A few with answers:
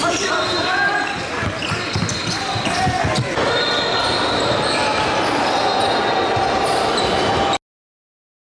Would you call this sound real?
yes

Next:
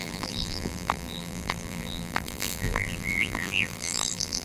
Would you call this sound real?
no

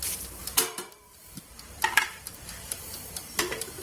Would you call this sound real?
no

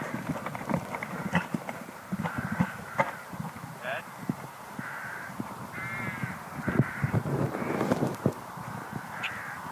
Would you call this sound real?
no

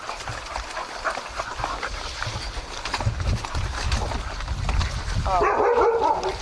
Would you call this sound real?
yes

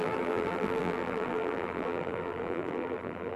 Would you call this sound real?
no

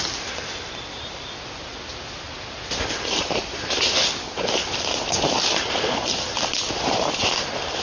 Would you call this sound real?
no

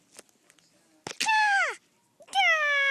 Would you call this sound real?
yes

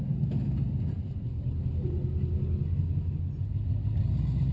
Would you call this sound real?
yes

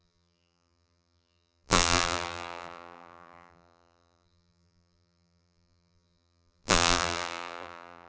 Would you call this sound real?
no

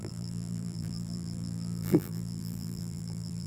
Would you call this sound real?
no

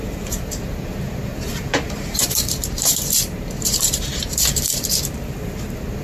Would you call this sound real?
no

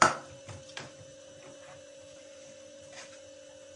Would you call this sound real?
no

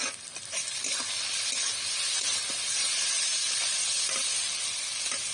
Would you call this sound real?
yes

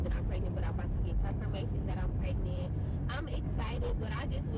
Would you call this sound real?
no